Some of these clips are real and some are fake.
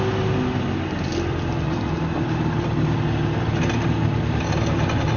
real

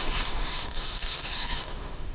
fake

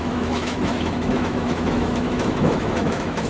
fake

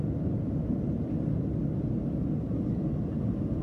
real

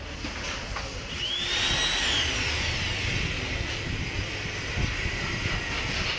real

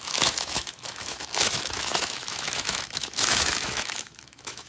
fake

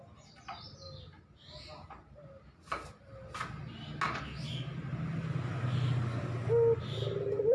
real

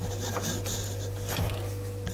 real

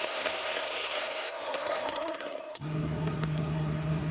fake